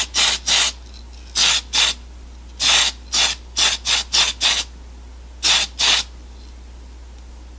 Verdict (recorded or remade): recorded